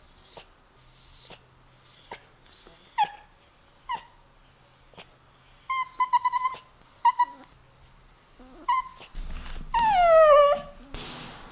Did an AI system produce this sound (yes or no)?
no